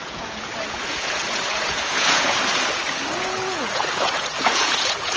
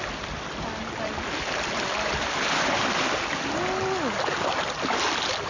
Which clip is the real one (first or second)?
second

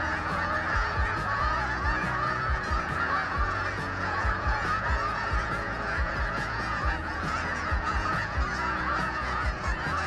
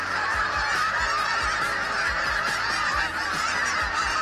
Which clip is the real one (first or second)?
second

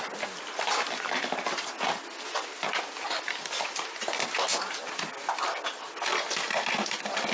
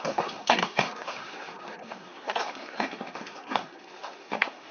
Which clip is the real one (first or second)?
first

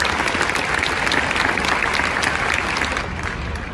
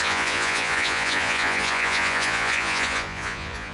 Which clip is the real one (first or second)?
first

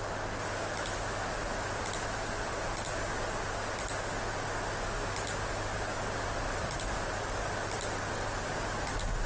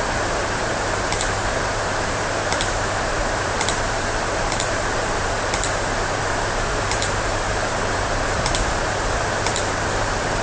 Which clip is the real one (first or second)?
first